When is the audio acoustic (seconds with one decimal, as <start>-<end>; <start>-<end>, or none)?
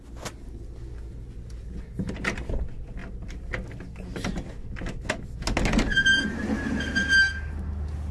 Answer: 0.0-8.1